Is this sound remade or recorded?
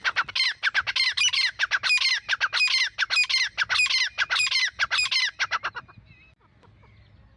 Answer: recorded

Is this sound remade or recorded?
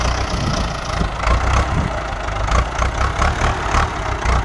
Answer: recorded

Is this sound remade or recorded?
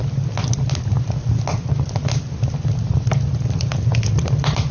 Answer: recorded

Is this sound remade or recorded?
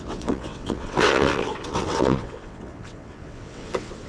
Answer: remade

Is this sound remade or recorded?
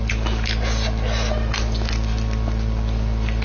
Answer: recorded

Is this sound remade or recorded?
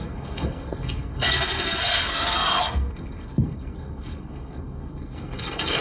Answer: remade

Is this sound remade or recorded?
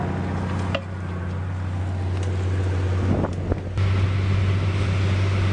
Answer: recorded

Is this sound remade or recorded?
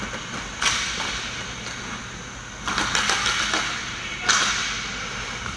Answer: recorded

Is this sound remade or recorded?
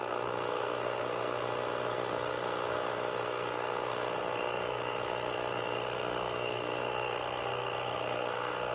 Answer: remade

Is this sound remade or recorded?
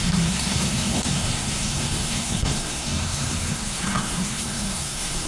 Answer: remade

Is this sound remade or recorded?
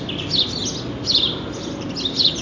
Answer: recorded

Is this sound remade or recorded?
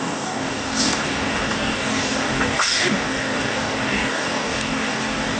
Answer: remade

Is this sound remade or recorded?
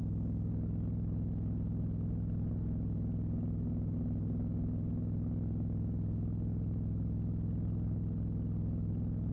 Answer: recorded